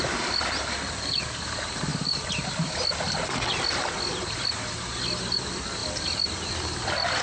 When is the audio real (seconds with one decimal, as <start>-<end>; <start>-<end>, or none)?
0.0-5.8